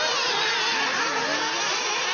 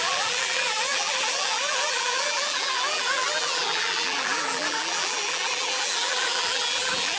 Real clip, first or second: first